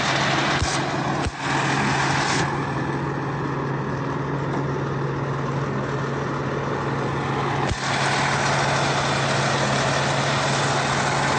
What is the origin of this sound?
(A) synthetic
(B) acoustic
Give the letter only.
B